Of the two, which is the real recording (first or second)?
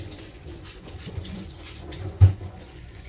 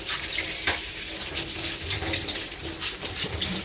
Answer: second